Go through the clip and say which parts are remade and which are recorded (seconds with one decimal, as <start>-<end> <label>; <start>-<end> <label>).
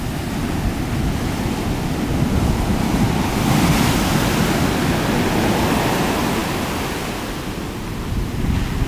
0.0-8.9 recorded